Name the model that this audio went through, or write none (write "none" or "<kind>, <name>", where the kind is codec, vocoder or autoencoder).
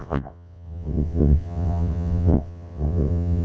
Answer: vocoder, WaveNeXt